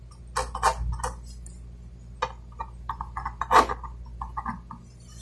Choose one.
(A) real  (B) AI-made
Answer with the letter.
A